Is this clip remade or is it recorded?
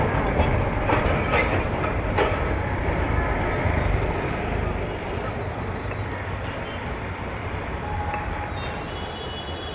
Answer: recorded